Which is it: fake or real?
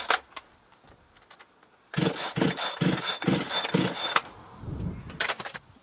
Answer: real